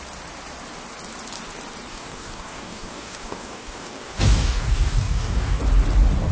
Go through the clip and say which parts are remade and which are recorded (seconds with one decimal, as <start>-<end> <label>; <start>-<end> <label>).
0.0-1.9 recorded; 1.9-5.6 remade; 5.6-6.3 recorded